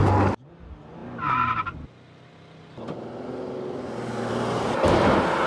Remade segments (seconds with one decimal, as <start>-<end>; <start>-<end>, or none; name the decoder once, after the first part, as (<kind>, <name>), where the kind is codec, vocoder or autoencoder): none